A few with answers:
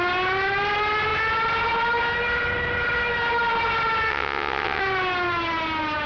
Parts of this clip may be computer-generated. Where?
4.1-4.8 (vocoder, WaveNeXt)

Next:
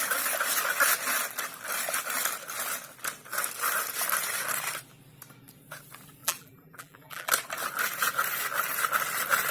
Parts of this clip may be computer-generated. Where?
6.2-7.3 (vocoder, BigVGAN v2)

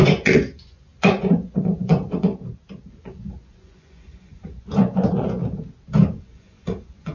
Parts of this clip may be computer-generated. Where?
0.0-2.3 (vocoder, Vocos); 2.9-5.4; 6.2-7.1

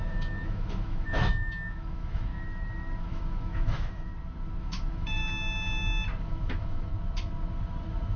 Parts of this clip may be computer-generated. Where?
0.0-2.3 (autoencoder, DAC-VAE); 3.0-4.1; 4.6-5.2; 6.2-6.9